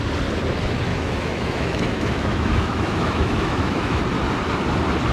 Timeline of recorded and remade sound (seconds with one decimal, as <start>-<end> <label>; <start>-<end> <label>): 0.0-0.9 recorded; 0.9-4.0 remade; 4.0-5.1 recorded